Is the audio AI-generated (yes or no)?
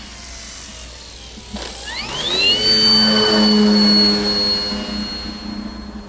no